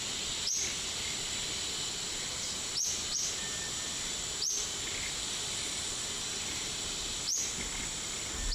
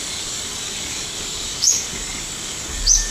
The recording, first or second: first